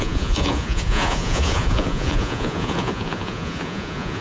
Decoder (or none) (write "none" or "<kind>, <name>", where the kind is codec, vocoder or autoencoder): vocoder, Vocos